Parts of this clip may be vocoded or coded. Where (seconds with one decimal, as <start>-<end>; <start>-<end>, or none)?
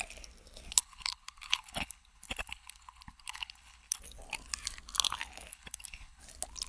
0.8-4.0; 5.5-6.2